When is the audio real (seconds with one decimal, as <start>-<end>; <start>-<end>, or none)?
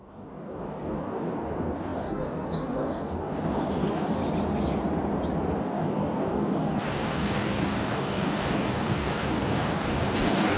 4.2-5.6